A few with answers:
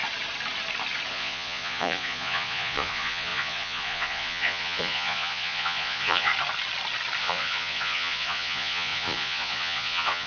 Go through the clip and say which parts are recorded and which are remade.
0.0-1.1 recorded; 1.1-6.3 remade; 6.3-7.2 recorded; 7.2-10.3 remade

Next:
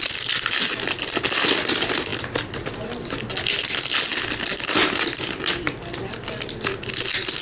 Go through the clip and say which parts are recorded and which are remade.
0.0-7.4 recorded

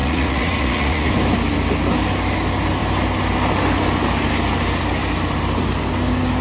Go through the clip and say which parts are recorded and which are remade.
0.0-1.1 remade; 1.1-6.4 recorded